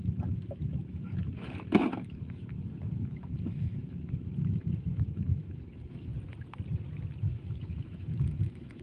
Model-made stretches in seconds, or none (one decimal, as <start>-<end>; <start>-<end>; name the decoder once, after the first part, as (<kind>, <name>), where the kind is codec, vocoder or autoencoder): 0.0-6.1 (autoencoder, DAC-VAE); 7.2-8.8